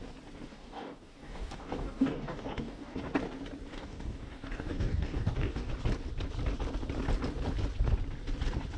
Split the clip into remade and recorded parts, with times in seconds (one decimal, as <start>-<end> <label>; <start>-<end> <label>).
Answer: 0.0-0.5 recorded; 0.5-3.0 remade; 3.0-3.7 recorded; 3.7-5.7 remade; 5.7-8.8 recorded